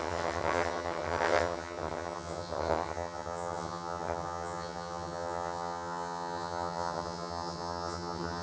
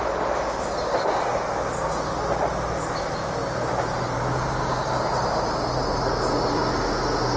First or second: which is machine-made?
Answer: first